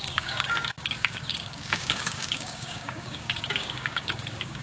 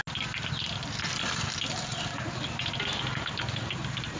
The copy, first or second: first